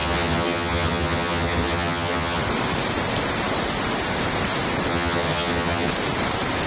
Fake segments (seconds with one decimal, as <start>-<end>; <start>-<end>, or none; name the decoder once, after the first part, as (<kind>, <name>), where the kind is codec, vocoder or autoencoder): 0.0-2.4 (vocoder, HiFi-GAN); 4.9-5.9